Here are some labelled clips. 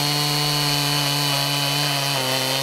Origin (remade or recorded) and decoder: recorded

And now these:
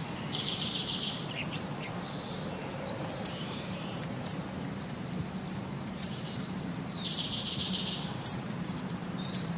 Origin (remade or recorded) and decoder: remade, vocoder, BigVGAN v2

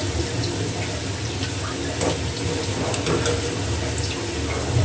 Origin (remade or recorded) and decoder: recorded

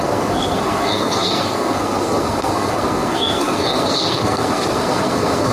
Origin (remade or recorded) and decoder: remade, codec, SNAC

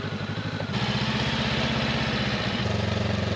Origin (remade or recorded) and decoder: recorded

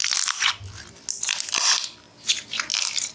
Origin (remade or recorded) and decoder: recorded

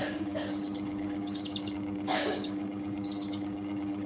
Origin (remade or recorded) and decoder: remade, codec, DAC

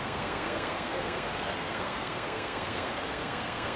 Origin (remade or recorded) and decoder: remade, codec, SNAC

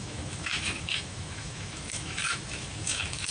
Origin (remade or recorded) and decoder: remade, autoencoder, DAC-VAE